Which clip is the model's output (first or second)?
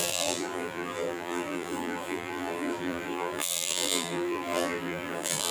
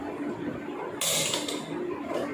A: first